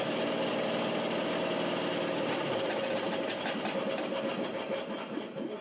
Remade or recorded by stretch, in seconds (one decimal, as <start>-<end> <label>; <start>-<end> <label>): 0.0-5.6 recorded

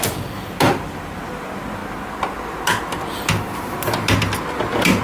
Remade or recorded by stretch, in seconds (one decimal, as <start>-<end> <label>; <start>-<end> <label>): 0.0-5.0 recorded

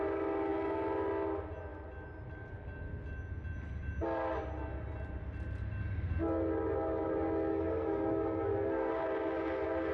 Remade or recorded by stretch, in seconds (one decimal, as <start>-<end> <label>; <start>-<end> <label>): 0.0-7.5 recorded; 7.5-8.9 remade; 8.9-9.9 recorded

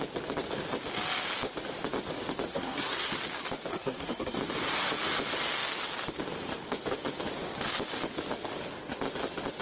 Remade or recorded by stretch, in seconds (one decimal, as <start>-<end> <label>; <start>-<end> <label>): 0.0-2.5 recorded; 2.5-3.1 remade; 3.1-3.7 recorded; 3.7-4.4 remade; 4.4-9.6 recorded